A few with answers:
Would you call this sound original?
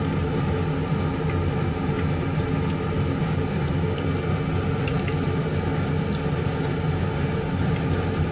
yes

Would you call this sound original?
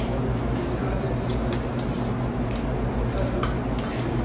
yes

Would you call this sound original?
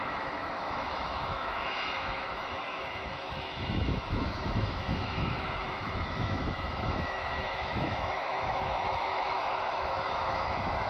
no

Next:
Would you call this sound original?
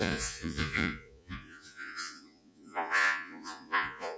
no